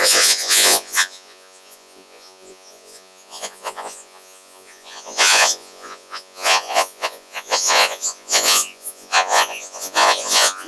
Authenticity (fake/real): fake